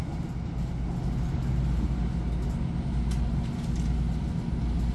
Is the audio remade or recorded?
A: recorded